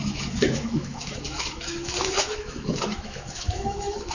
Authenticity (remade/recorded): remade